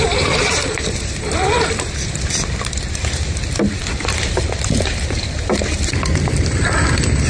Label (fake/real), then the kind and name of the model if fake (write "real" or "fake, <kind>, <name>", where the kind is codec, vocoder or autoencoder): real